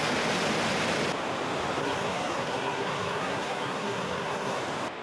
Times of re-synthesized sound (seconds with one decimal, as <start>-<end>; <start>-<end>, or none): 1.8-4.6